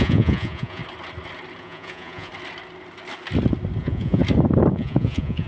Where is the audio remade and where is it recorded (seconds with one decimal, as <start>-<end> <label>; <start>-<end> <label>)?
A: 0.0-0.8 remade; 0.8-1.6 recorded; 1.6-2.3 remade; 2.3-3.8 recorded; 3.8-4.2 remade; 4.2-4.7 recorded; 4.7-5.5 remade